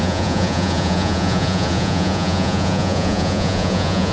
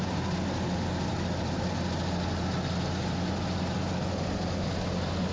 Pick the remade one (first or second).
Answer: first